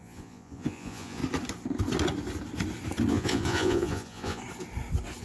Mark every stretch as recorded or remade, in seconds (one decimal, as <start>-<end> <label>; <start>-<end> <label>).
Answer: 0.0-1.2 remade; 1.2-3.1 recorded; 3.1-4.4 remade; 4.4-5.2 recorded